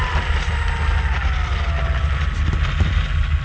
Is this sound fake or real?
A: real